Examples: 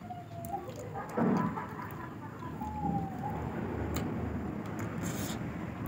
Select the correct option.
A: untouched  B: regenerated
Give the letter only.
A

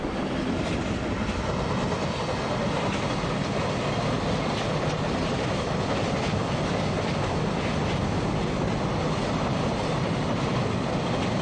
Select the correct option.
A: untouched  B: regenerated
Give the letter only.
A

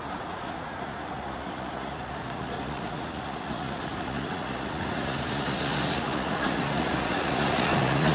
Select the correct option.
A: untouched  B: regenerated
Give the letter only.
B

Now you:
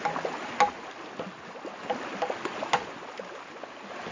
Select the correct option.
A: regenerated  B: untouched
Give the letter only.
B